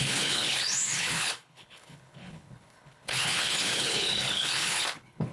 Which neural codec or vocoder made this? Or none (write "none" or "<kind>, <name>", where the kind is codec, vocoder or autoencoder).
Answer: codec, HILCodec